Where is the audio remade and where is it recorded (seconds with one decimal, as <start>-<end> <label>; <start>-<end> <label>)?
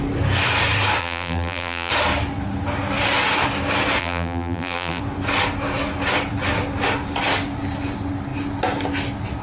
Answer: 0.0-1.0 recorded; 1.0-1.9 remade; 1.9-4.0 recorded; 4.0-5.0 remade; 5.0-9.4 recorded